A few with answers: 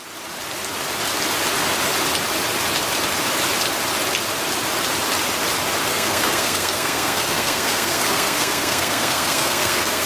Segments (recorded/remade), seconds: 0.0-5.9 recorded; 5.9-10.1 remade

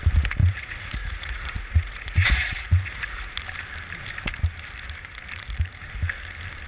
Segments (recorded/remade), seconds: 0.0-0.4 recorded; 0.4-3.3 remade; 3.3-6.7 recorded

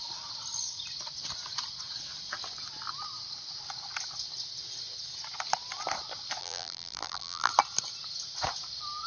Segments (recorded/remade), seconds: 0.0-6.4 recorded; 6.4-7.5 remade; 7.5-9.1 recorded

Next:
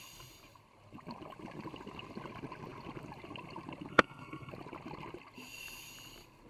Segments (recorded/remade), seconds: 0.0-3.9 recorded; 3.9-4.5 remade; 4.5-6.5 recorded

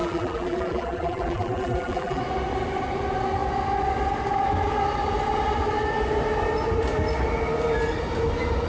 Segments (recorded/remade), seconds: 0.0-2.2 remade; 2.2-8.7 recorded